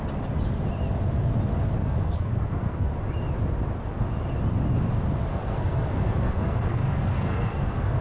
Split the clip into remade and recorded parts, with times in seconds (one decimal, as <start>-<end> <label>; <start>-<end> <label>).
0.0-1.8 recorded; 1.8-2.9 remade; 2.9-5.3 recorded; 5.3-8.0 remade

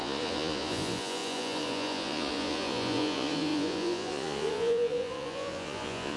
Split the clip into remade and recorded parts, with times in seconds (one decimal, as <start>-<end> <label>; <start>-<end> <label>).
0.0-6.2 remade

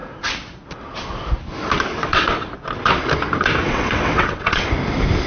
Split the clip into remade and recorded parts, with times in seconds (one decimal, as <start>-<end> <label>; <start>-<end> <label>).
0.0-1.9 recorded; 1.9-2.5 remade; 2.5-3.6 recorded; 3.6-4.7 remade; 4.7-5.3 recorded

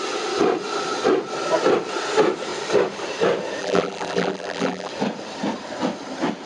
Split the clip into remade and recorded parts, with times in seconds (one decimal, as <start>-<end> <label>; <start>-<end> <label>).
0.0-3.6 recorded; 3.6-4.9 remade; 4.9-6.5 recorded

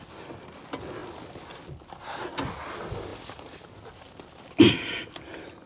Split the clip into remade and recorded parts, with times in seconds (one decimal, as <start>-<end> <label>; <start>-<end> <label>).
0.0-5.7 recorded

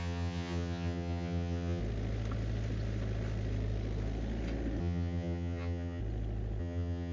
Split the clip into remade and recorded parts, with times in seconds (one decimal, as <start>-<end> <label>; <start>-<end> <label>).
0.0-1.8 remade; 1.8-4.8 recorded; 4.8-6.0 remade; 6.0-6.6 recorded; 6.6-7.1 remade